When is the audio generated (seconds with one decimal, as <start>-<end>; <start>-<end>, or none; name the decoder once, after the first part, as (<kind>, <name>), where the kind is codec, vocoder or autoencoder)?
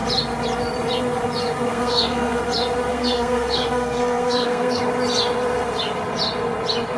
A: 1.7-2.4 (codec, SNAC); 2.9-4.8